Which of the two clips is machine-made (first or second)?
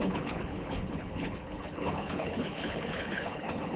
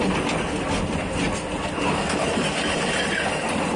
first